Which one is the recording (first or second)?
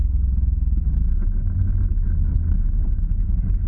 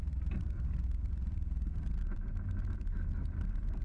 first